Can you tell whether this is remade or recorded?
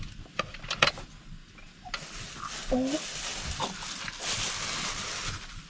recorded